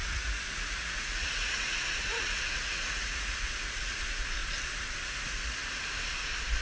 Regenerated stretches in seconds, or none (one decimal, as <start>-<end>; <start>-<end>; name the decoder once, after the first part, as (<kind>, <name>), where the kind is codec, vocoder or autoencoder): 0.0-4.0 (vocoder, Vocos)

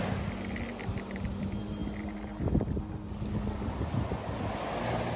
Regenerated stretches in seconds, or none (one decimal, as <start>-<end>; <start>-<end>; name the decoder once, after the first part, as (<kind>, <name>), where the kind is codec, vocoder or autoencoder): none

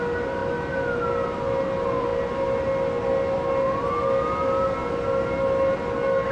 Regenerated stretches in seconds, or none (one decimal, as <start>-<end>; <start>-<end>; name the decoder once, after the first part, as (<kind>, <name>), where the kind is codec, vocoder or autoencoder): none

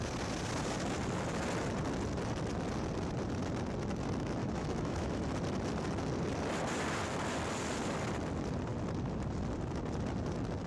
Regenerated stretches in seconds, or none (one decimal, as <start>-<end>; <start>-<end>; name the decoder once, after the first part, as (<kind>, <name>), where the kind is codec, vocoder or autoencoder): 4.4-5.2 (autoencoder, DAC-VAE)

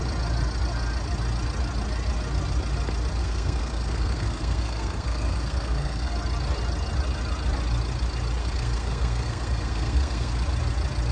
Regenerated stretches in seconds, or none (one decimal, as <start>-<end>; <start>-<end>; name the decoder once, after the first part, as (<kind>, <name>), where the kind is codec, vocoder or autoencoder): 3.2-6.1 (codec, SNAC); 8.4-10.3

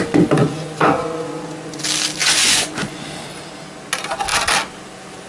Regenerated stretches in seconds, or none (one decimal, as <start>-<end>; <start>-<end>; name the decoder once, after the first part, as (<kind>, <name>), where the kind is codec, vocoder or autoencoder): 0.4-1.8 (vocoder, Vocos); 2.2-3.1

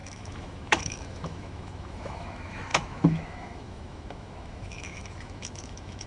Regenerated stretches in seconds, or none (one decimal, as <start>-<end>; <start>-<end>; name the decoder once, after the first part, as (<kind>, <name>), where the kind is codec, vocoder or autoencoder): 0.0-6.1 (autoencoder, DAC-VAE)

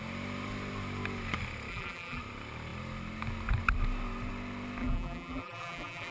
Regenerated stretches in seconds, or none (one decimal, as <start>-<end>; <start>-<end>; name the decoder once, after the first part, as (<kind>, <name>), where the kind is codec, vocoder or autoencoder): 1.7-2.2 (vocoder, BigVGAN v2); 4.8-6.1